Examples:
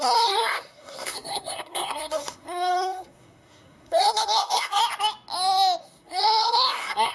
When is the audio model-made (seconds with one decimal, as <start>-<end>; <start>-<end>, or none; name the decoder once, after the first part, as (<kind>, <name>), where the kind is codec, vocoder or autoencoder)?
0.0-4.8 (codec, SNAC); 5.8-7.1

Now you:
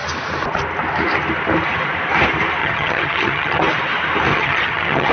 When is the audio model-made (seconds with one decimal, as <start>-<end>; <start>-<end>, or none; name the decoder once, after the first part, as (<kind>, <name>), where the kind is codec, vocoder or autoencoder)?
2.6-3.6 (vocoder, HiFi-GAN); 4.3-5.1

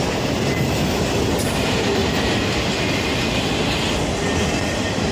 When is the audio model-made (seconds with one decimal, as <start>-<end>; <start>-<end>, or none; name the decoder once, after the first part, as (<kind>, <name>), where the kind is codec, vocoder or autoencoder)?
none